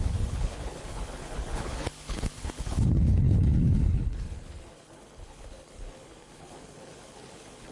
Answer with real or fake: fake